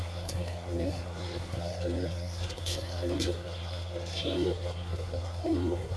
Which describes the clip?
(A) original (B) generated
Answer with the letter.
B